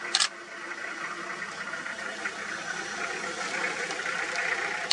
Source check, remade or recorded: recorded